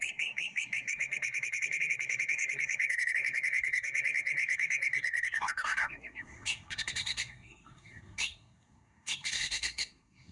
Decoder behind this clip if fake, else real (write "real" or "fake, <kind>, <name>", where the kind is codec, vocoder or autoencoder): fake, codec, SNAC